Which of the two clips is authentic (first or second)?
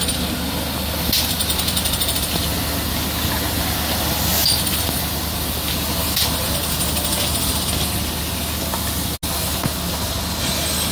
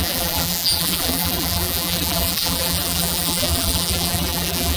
first